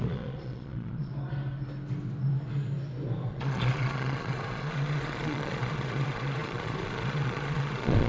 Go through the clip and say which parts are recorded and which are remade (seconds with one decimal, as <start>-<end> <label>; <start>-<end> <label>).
0.0-1.1 remade; 1.1-3.3 recorded; 3.3-8.1 remade